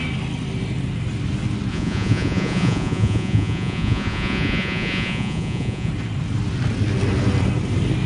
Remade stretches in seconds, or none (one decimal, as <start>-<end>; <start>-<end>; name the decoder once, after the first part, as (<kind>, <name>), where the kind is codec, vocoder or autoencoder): 1.7-5.9 (vocoder, Vocos)